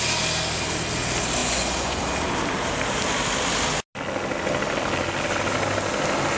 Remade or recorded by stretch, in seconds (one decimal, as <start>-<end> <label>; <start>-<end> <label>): 0.0-1.4 recorded; 1.4-2.0 remade; 2.0-6.4 recorded